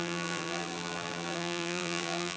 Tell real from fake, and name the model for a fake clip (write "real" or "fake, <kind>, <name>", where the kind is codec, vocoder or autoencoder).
fake, vocoder, BigVGAN v2